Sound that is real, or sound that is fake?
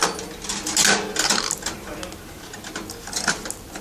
real